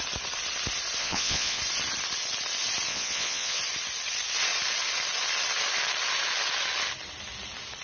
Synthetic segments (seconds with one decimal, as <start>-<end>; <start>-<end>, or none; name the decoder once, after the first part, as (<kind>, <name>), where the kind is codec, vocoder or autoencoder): 1.0-1.6 (vocoder, Vocos); 2.9-3.6